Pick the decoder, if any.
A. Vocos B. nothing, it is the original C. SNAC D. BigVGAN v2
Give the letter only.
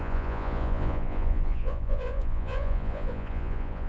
A